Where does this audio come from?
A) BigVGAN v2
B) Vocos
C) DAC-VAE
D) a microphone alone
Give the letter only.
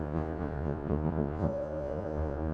B